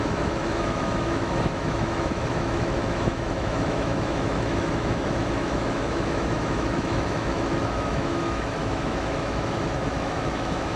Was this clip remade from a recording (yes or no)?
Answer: yes